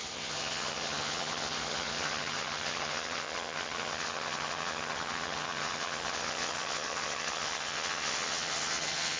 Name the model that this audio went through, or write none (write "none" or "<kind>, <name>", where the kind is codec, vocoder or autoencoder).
vocoder, HiFi-GAN